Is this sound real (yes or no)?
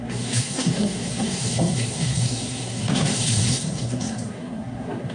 no